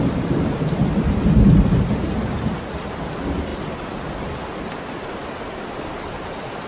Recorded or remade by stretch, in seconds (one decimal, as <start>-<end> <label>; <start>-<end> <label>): 0.0-6.7 recorded